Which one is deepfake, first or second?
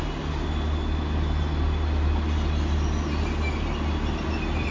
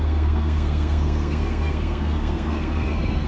second